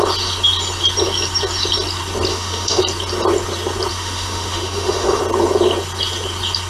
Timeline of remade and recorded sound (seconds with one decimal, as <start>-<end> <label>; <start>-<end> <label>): 0.0-2.3 recorded; 2.3-2.8 remade; 2.8-3.9 recorded; 3.9-5.2 remade; 5.2-6.7 recorded